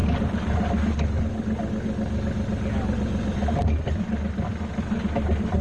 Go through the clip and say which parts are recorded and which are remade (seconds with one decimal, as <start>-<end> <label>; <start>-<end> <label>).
0.0-5.6 recorded